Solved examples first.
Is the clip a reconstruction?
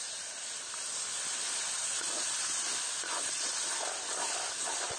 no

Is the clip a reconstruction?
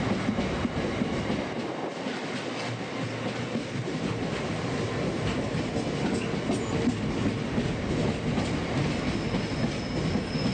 no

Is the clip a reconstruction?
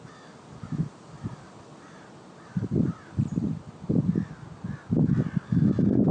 no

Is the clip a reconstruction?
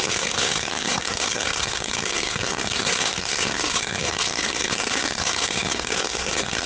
yes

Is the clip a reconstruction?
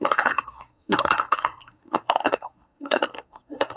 yes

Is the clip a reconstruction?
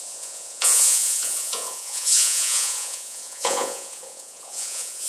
yes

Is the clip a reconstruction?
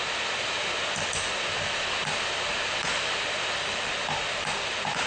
no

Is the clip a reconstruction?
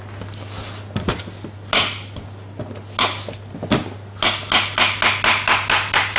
no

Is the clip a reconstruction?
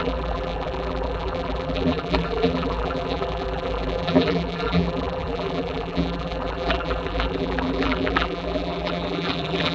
yes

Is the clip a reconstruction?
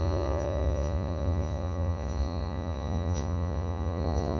yes